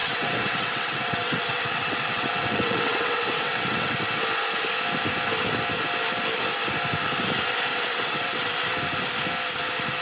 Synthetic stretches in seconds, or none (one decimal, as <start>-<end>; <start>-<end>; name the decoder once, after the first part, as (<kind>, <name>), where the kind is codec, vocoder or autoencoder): 0.0-4.2 (vocoder, WaveNeXt); 7.7-8.5